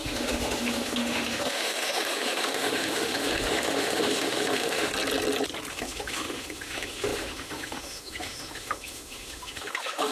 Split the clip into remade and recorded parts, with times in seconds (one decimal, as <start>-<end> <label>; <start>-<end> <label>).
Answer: 0.0-4.9 remade; 4.9-5.7 recorded; 5.7-10.1 remade